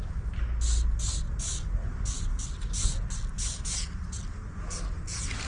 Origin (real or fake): real